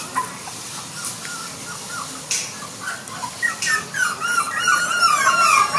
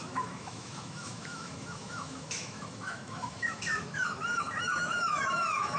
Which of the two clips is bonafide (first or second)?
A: first